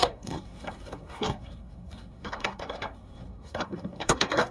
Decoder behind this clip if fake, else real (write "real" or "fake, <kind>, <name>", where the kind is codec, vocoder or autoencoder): fake, codec, SNAC